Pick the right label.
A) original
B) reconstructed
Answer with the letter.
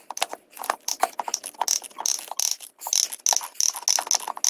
A